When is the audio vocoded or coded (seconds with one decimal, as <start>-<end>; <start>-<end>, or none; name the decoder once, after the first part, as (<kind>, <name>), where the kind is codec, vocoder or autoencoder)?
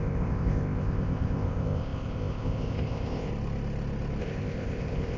0.0-3.3 (codec, ZipCodec); 4.2-5.2